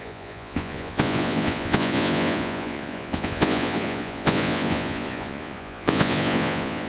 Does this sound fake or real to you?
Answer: fake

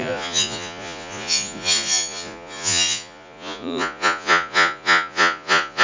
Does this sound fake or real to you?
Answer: fake